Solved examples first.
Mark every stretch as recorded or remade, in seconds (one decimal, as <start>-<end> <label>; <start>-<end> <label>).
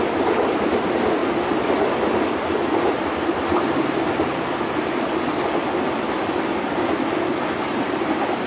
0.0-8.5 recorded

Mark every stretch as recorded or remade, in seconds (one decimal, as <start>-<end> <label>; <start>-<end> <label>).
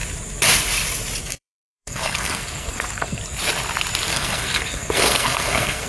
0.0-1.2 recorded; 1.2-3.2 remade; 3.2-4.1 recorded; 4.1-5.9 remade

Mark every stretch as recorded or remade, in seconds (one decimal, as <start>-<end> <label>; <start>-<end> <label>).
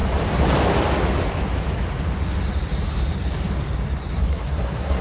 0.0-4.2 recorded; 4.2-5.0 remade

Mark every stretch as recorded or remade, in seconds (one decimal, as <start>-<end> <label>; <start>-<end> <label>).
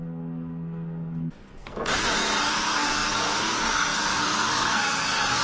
0.0-1.9 remade; 1.9-2.5 recorded; 2.5-5.4 remade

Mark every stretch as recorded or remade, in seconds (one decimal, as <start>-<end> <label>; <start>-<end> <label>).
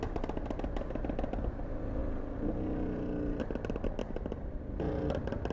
0.0-5.5 recorded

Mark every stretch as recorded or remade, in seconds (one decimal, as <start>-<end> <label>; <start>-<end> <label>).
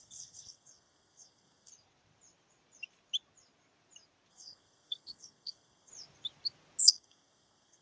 0.0-1.7 remade; 1.7-4.3 recorded; 4.3-5.9 remade; 5.9-6.8 recorded; 6.8-7.8 remade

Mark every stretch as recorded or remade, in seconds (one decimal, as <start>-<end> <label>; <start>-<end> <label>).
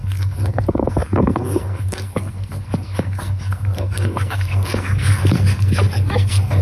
0.0-6.6 remade